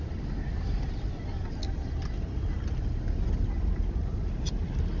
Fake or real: real